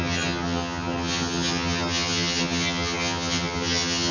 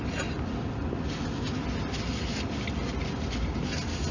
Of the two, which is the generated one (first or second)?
first